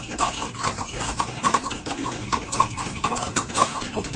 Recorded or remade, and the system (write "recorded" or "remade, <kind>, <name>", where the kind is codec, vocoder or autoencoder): remade, codec, SNAC